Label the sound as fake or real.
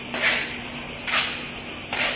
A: real